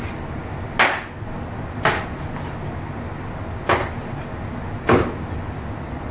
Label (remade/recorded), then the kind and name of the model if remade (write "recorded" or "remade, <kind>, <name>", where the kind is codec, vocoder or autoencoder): recorded